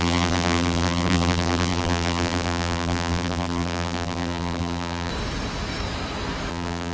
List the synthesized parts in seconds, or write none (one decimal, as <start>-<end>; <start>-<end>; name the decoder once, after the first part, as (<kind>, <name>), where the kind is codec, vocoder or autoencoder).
0.0-5.1 (vocoder, BigVGAN v2); 6.5-6.9